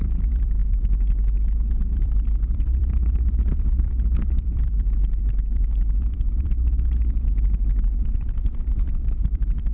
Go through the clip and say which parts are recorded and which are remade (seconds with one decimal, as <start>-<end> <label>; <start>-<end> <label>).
0.0-9.7 remade